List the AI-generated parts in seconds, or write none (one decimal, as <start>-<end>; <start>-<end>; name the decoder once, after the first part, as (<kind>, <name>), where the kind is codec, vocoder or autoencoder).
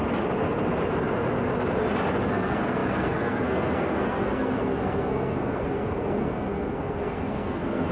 2.2-7.9 (codec, SNAC)